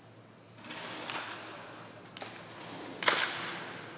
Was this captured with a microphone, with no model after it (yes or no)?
yes